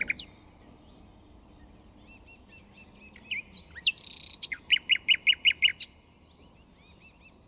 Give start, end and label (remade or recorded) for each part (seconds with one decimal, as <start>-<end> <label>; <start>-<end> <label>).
0.0-7.5 recorded